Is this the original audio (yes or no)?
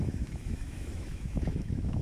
no